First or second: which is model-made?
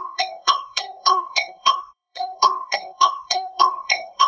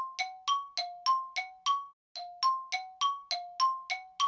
first